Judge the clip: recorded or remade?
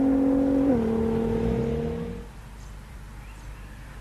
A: recorded